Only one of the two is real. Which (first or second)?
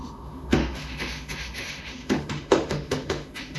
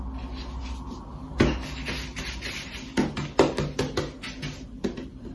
second